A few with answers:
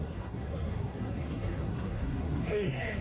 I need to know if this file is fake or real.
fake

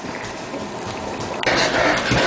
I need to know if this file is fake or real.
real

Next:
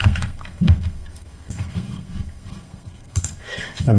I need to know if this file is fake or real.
fake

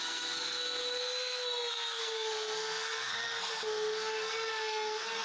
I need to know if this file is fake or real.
fake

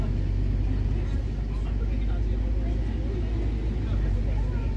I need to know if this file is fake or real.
real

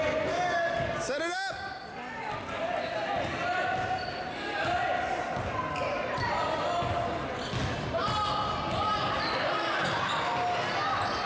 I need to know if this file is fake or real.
real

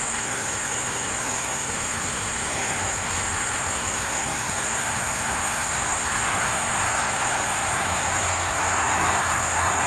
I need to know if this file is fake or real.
fake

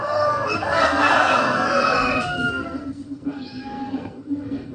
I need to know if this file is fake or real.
fake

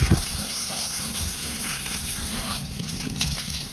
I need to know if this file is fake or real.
fake